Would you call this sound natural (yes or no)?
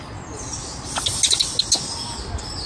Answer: yes